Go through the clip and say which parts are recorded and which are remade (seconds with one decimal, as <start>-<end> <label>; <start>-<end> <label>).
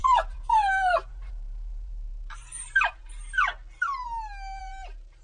0.0-3.2 remade; 3.2-4.6 recorded; 4.6-5.2 remade